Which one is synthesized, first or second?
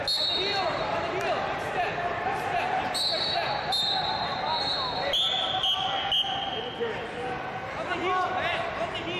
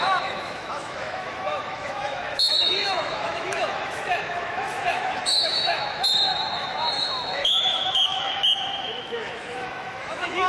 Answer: second